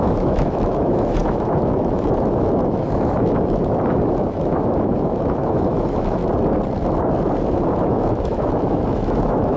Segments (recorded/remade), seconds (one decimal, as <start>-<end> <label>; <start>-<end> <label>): 0.0-6.2 remade; 6.2-7.7 recorded; 7.7-9.6 remade